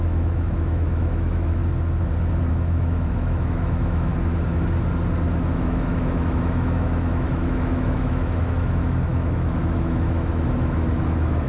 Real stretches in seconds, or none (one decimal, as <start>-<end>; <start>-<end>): 1.6-2.5; 4.1-5.5